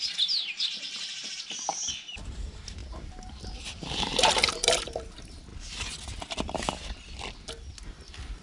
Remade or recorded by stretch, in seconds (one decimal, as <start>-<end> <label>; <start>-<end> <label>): 0.0-5.5 remade; 5.5-7.9 recorded; 7.9-8.4 remade